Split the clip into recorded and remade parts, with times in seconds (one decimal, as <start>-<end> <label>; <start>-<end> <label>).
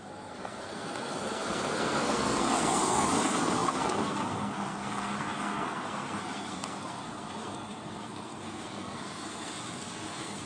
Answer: 0.0-10.5 remade